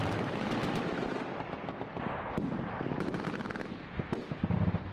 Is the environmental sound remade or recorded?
recorded